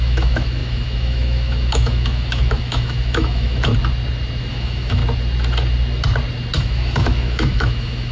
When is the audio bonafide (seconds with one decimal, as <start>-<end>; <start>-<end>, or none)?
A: 3.7-4.5; 5.0-6.6